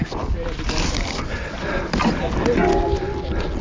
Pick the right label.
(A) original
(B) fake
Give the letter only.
A